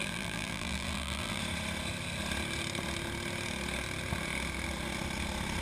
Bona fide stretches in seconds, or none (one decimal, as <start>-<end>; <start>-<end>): 1.4-5.6